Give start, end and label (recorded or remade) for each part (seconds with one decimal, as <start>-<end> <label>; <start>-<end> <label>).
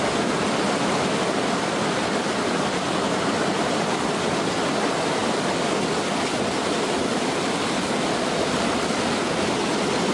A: 0.0-10.1 recorded